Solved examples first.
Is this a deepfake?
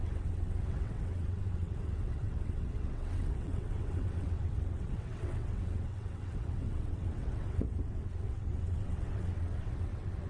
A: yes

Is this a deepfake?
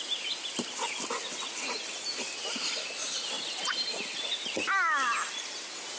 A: no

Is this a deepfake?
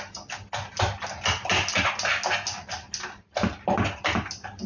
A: no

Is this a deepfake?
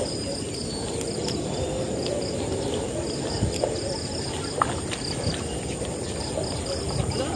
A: no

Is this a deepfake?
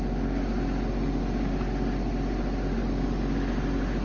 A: no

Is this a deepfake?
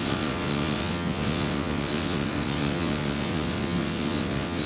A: yes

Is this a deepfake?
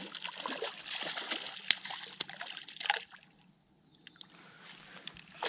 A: no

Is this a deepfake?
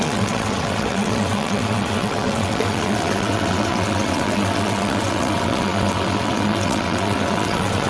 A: yes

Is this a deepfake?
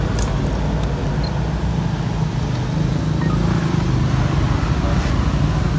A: no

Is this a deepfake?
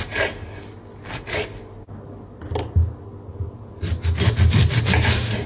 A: no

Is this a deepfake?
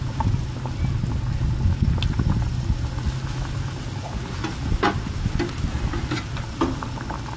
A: no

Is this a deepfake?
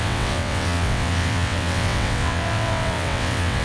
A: yes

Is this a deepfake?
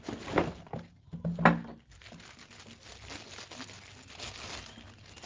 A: no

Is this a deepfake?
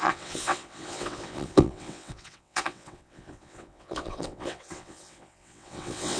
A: yes